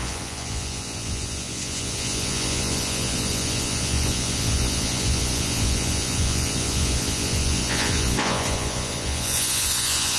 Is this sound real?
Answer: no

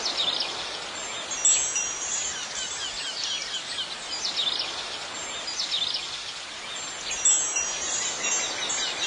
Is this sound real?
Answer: yes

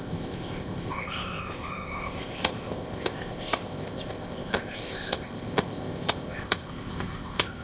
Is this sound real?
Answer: no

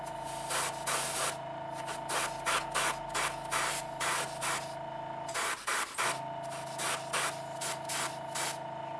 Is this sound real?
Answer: yes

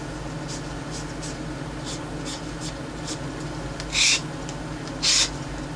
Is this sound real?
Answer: yes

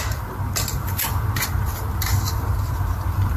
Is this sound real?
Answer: yes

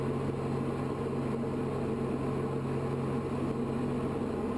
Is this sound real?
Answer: yes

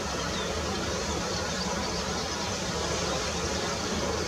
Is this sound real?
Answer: yes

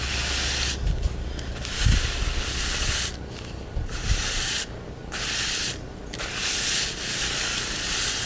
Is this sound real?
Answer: yes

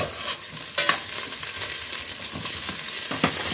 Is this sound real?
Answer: yes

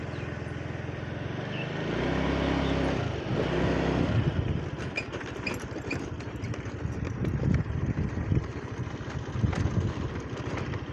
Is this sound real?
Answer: yes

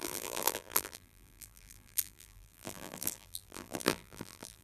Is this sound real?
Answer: no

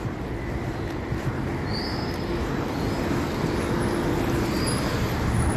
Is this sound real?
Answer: yes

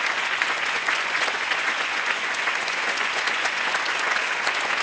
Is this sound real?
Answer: no